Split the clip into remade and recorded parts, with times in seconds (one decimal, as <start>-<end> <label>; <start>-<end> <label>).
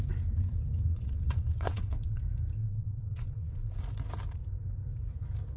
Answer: 0.0-0.9 recorded; 0.9-2.2 remade; 2.2-2.6 recorded; 2.6-3.8 remade; 3.8-5.6 recorded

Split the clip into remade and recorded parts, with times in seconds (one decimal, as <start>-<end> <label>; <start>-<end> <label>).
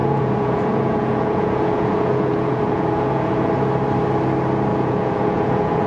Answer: 0.0-3.5 remade; 3.5-4.7 recorded; 4.7-5.9 remade